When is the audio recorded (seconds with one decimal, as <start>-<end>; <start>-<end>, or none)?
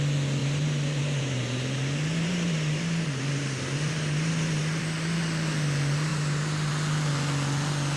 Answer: 0.0-0.4; 5.2-6.1; 6.7-8.0